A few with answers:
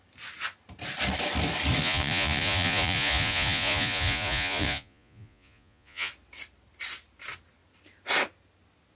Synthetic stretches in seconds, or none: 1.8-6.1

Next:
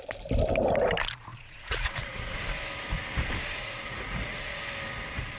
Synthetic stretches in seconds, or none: 1.3-2.4; 3.6-4.6

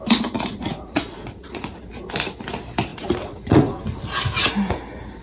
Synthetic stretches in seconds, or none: 0.5-1.8; 2.9-3.8

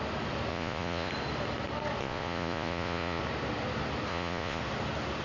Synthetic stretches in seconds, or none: 0.5-1.1; 2.0-3.2; 4.1-4.6